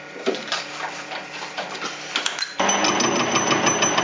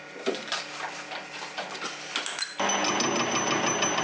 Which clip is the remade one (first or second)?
first